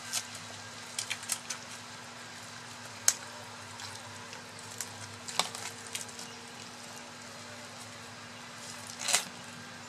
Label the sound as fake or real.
real